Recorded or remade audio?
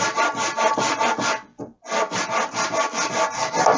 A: recorded